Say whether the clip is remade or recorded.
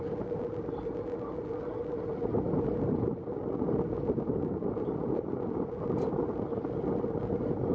recorded